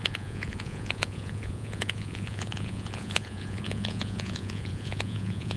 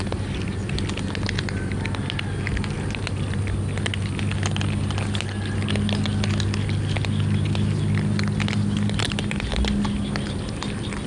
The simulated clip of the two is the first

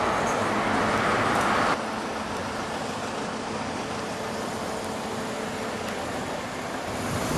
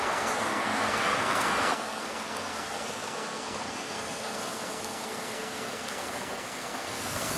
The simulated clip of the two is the second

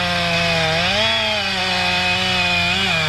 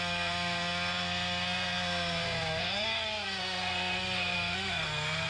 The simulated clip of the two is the second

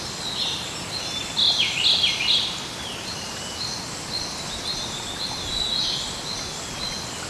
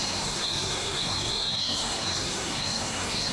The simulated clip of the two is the second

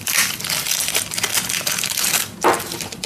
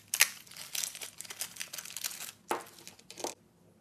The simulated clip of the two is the first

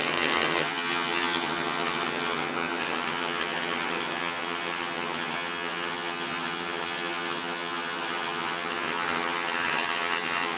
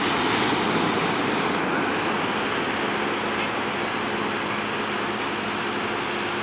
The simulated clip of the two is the first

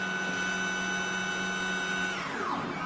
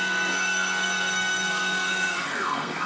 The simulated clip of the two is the second